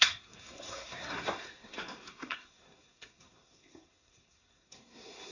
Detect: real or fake fake